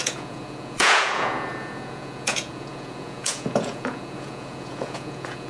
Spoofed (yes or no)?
yes